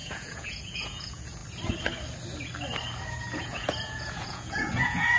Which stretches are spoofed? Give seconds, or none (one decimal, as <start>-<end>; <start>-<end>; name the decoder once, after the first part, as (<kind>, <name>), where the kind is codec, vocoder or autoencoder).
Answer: 0.0-1.4 (vocoder, Vocos); 3.2-5.2